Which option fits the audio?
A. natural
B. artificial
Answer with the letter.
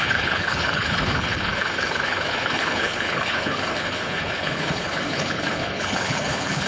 B